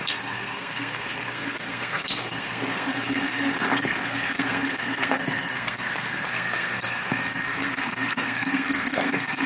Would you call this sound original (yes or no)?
no